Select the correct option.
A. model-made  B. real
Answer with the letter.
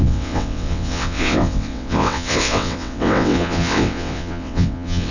A